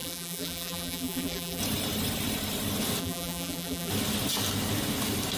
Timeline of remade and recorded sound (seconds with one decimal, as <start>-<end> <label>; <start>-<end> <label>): 0.0-1.6 remade; 1.6-3.0 recorded; 3.0-3.9 remade; 3.9-5.4 recorded